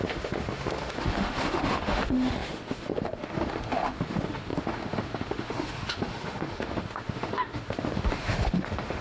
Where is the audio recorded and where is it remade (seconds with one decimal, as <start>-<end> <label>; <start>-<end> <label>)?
0.0-9.0 remade